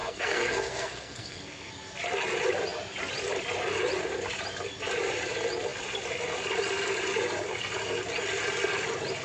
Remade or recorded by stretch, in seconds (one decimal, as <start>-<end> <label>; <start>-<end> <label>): 0.0-1.7 remade; 1.7-9.2 recorded